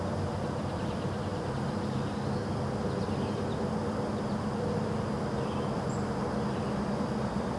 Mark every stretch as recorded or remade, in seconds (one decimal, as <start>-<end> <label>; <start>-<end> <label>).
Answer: 0.0-7.6 recorded